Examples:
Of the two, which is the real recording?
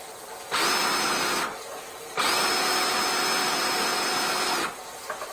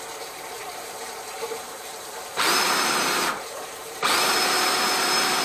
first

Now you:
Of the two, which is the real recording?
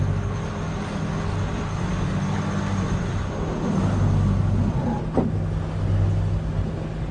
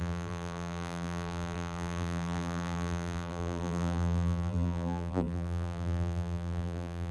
first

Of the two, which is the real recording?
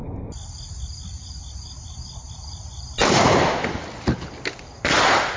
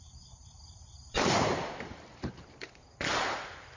first